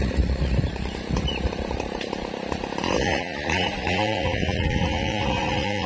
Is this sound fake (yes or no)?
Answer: yes